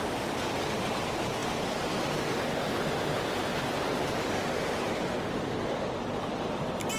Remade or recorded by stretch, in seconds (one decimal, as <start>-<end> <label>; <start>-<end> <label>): 0.0-7.0 recorded